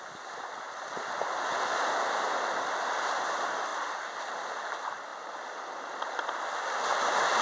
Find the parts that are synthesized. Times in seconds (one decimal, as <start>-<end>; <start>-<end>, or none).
none